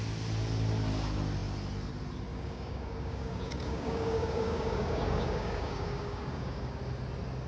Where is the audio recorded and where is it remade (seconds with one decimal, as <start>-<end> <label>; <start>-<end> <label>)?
0.0-2.3 recorded; 2.3-6.8 remade; 6.8-7.5 recorded